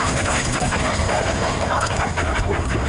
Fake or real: fake